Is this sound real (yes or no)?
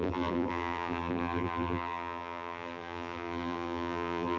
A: no